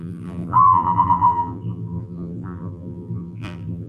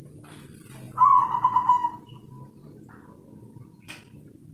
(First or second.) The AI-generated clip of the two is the first